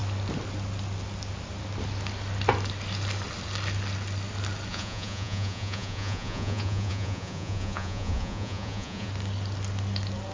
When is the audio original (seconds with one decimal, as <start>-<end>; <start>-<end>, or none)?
0.0-4.7; 9.1-10.3